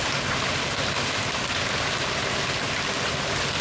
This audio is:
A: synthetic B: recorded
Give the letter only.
B